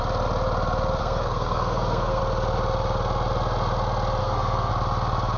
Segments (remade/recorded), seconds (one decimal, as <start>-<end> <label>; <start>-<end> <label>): 0.0-1.0 recorded; 1.0-2.2 remade; 2.2-4.2 recorded; 4.2-4.7 remade; 4.7-5.4 recorded